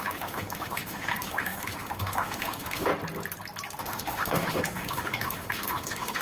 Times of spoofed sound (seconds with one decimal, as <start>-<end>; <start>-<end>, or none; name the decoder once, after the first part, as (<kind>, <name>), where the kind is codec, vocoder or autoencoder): 0.0-2.9 (autoencoder, DAC-VAE); 3.8-6.2